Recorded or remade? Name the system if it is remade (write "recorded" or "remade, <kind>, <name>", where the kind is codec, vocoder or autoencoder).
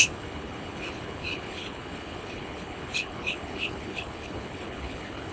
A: remade, codec, HILCodec